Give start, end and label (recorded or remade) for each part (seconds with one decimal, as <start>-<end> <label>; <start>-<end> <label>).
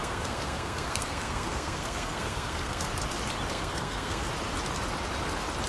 0.0-2.9 remade; 2.9-3.5 recorded; 3.5-4.3 remade; 4.3-5.7 recorded